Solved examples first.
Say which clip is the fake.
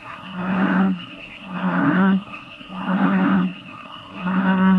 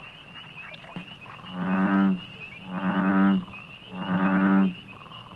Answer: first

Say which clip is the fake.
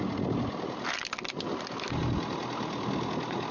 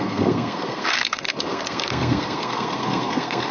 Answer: second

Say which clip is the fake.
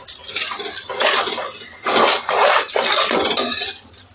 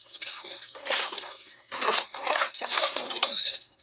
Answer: second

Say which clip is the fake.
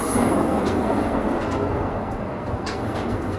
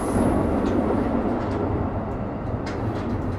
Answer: first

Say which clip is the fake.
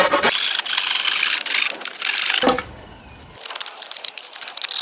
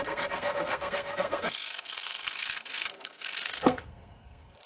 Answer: second